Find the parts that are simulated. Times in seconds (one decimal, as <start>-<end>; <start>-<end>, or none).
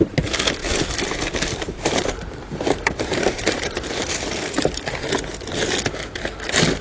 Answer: 0.6-4.7